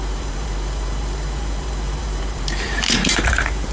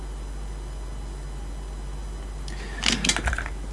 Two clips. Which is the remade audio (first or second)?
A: first